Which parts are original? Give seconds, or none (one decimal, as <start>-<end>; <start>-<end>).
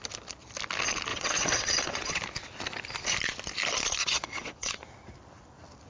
0.0-1.1; 2.2-4.0; 4.8-5.9